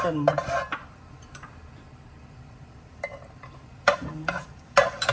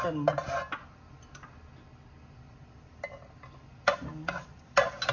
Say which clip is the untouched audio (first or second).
second